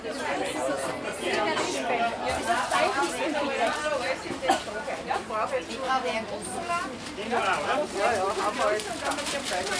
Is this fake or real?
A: real